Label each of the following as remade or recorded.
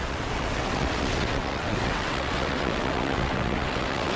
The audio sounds remade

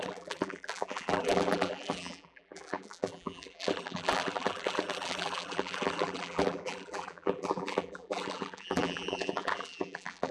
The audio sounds remade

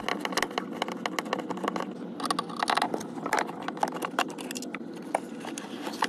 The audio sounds recorded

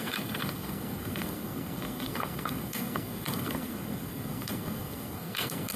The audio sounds remade